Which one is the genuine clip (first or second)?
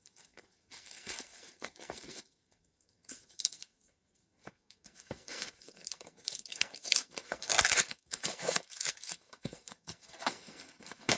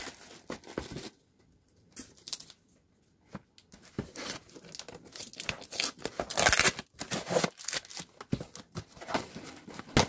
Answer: second